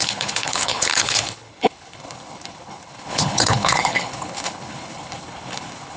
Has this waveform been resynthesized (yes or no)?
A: yes